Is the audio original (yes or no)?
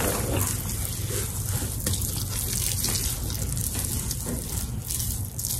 yes